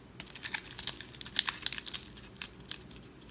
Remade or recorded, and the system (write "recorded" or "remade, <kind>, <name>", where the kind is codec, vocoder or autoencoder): recorded